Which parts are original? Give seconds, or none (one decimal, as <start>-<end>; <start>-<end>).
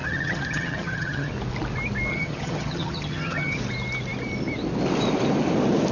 1.3-2.1; 3.6-5.9